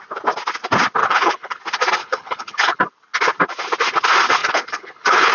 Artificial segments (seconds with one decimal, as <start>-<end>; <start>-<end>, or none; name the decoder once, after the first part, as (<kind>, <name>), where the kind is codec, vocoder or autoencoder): 1.0-1.6 (codec, HILCodec); 2.0-2.8; 4.4-5.3